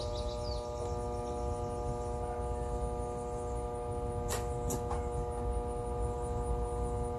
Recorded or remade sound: recorded